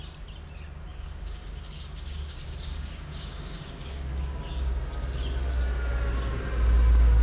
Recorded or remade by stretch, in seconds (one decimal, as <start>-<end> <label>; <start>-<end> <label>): 0.0-0.9 recorded; 0.9-4.7 remade; 4.7-7.2 recorded